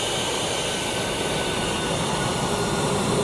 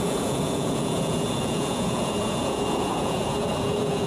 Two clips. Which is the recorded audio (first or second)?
first